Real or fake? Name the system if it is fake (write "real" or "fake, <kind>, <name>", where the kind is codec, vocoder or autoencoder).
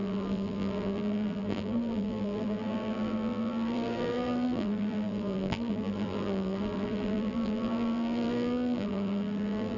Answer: fake, vocoder, BigVGAN v2